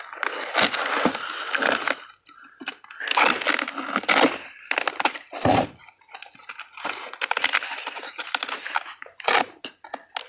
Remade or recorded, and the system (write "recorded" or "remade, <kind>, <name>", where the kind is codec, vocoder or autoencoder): recorded